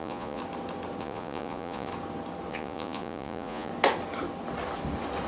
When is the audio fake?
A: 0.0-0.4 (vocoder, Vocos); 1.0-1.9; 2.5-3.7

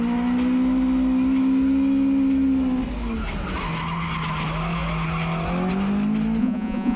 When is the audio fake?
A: 6.4-7.0 (vocoder, Vocos)

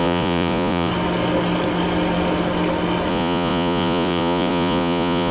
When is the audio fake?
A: 0.0-0.9 (vocoder, Vocos); 3.1-5.3

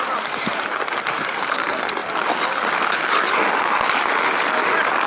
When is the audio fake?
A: none